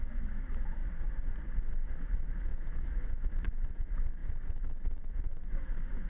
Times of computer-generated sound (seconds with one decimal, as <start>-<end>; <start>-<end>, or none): 0.0-0.8; 1.7-6.1